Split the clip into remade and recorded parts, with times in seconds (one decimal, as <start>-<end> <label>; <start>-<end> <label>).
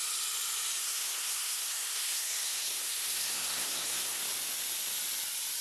0.0-0.8 recorded; 0.8-4.2 remade; 4.2-5.6 recorded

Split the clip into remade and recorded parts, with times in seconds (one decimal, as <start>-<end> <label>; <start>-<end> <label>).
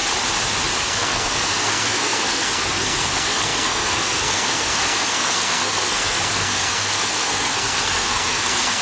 0.0-0.8 recorded; 0.8-8.8 remade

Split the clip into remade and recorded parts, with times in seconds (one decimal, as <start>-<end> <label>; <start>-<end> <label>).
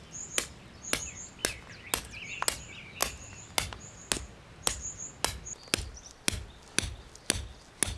0.0-8.0 recorded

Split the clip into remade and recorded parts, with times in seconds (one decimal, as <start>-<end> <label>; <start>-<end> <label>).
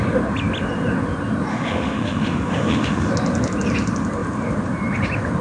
0.0-1.5 recorded; 1.5-3.1 remade; 3.1-5.4 recorded